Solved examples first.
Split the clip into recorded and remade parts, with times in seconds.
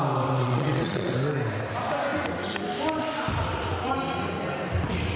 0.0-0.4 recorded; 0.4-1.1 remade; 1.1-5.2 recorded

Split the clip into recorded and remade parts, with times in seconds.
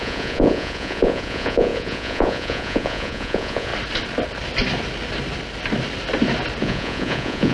0.0-3.7 remade; 3.7-6.6 recorded; 6.6-7.5 remade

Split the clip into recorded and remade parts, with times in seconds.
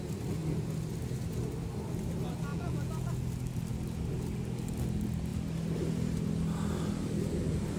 0.0-2.5 recorded; 2.5-3.1 remade; 3.1-7.8 recorded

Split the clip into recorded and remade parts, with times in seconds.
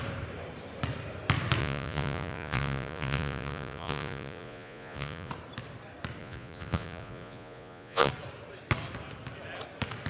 0.0-1.6 recorded; 1.6-5.3 remade; 5.3-6.2 recorded; 6.2-8.1 remade; 8.1-10.1 recorded